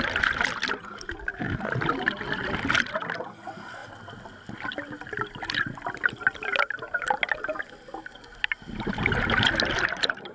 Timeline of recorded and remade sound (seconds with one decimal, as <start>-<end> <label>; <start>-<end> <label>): 0.0-10.3 recorded